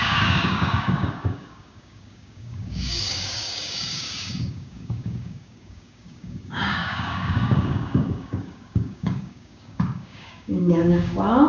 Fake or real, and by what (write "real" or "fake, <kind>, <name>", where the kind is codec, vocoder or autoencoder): fake, codec, DAC